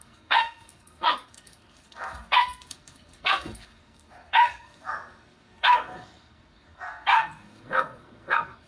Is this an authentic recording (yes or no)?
no